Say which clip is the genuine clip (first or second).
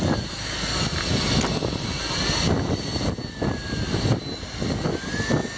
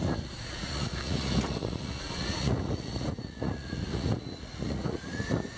first